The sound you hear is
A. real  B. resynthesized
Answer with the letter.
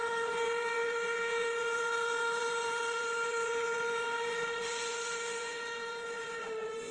B